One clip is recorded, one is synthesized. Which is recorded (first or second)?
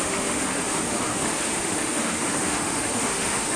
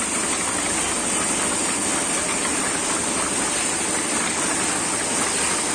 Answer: second